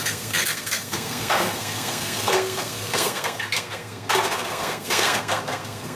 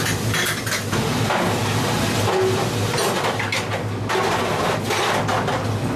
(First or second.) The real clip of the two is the second